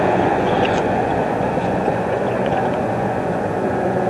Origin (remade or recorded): remade